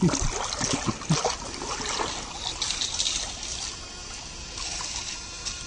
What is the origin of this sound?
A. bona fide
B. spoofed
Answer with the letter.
A